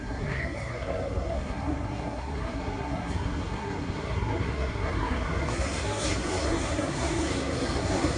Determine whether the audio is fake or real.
fake